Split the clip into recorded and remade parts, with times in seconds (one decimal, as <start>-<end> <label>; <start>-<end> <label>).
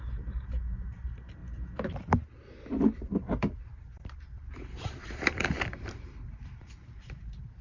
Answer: 0.0-1.4 remade; 1.4-2.8 recorded; 2.8-7.6 remade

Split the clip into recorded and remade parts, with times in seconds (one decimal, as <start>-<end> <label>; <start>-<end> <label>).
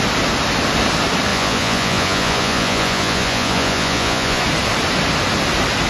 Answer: 0.0-1.3 recorded; 1.3-4.4 remade; 4.4-5.9 recorded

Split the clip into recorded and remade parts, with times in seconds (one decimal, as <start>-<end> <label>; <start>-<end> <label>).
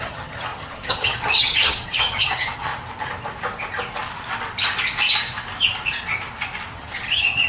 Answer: 0.0-2.7 remade; 2.7-6.7 recorded; 6.7-7.5 remade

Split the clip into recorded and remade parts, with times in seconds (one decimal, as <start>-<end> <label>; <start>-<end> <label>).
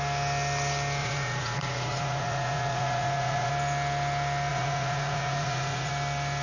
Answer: 0.0-1.0 recorded; 1.0-3.5 remade; 3.5-4.5 recorded; 4.5-5.9 remade; 5.9-6.4 recorded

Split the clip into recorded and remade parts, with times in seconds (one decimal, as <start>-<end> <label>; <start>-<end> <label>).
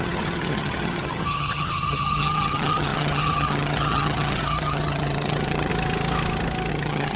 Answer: 0.0-5.7 remade; 5.7-6.7 recorded; 6.7-7.2 remade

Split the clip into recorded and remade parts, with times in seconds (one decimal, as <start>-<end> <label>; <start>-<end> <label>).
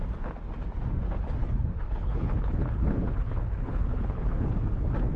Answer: 0.0-1.4 recorded; 1.4-4.5 remade; 4.5-5.2 recorded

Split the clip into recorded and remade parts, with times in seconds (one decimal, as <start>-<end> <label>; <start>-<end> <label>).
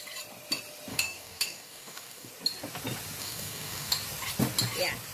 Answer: 0.0-0.9 recorded; 0.9-2.3 remade; 2.3-3.2 recorded; 3.2-3.9 remade; 3.9-5.1 recorded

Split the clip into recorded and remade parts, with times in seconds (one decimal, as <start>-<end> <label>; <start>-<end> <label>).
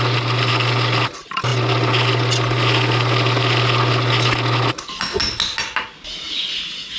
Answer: 0.0-7.0 recorded